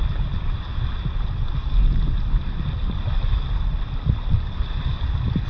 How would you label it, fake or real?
real